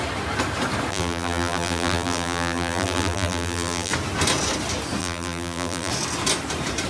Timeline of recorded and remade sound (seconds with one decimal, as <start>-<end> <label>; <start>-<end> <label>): 0.0-0.9 recorded; 0.9-3.9 remade; 3.9-5.0 recorded; 5.0-5.9 remade; 5.9-6.9 recorded